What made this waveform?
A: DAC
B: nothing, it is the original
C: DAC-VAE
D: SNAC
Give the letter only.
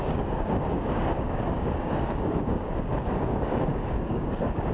A